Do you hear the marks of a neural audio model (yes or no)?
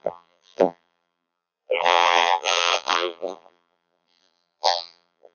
yes